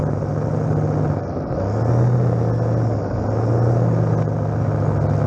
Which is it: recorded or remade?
recorded